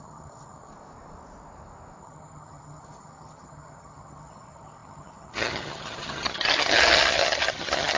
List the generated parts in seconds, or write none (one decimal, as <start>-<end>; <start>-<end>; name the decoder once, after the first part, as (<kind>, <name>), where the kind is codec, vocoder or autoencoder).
0.0-0.7 (vocoder, HiFi-GAN); 2.0-8.0